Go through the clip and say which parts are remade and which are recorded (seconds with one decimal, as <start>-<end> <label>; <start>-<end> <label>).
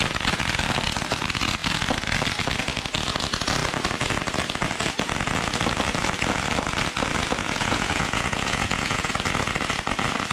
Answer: 0.0-7.4 recorded; 7.4-9.1 remade; 9.1-10.3 recorded